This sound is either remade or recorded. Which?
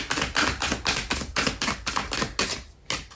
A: recorded